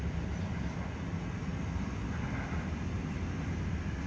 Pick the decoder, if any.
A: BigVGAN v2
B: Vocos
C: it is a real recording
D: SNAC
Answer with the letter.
C